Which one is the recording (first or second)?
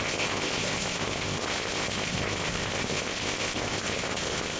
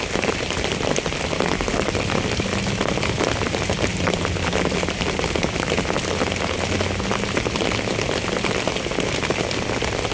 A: second